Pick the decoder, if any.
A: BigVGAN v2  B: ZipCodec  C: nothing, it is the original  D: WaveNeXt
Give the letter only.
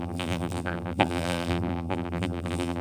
A